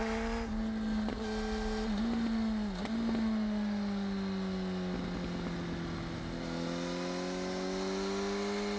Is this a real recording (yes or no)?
yes